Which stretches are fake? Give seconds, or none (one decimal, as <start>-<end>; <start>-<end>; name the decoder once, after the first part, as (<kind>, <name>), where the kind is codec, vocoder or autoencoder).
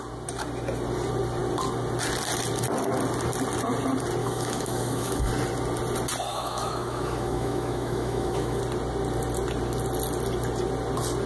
4.2-5.3 (autoencoder, DAC-VAE); 6.3-8.6